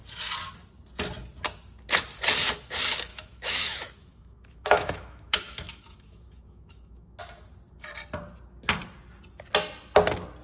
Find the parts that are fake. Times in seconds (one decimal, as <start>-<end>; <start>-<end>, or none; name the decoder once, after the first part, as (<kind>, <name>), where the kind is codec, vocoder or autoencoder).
3.1-7.2 (autoencoder, DAC-VAE)